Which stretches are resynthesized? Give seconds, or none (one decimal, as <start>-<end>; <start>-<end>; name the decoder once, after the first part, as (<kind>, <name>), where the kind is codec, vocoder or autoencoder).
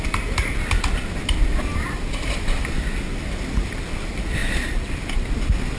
1.5-3.0 (vocoder, BigVGAN v2); 4.4-5.0